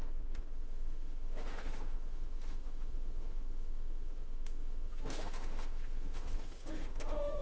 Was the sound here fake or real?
fake